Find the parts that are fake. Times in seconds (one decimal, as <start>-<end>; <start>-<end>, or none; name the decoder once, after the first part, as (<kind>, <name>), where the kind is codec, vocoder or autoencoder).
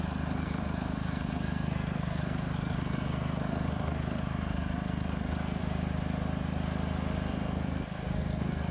0.0-5.6 (codec, SNAC); 7.3-8.7